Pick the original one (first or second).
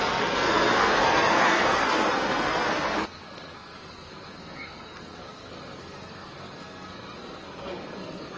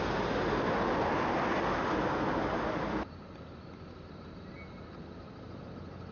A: second